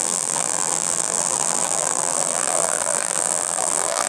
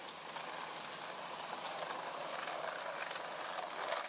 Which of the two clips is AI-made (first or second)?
first